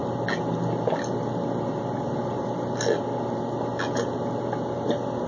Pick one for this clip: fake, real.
real